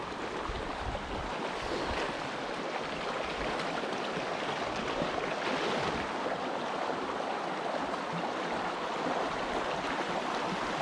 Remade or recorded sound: recorded